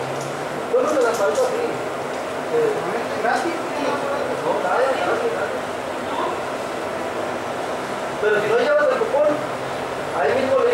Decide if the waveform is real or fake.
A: real